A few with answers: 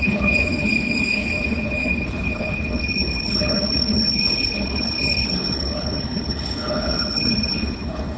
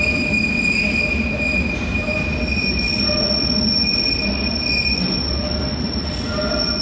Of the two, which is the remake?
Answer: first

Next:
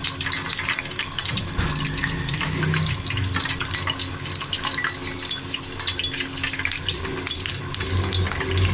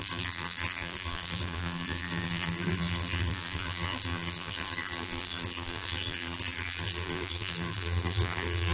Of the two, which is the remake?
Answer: second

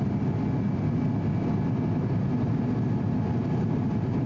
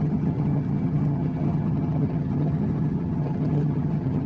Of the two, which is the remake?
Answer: second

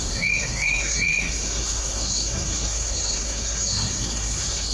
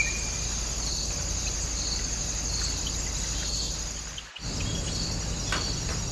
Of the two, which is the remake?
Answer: first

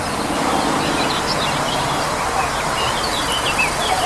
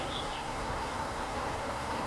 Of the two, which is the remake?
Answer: second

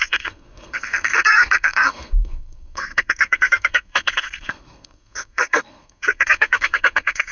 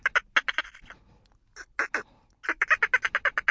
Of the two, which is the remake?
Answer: first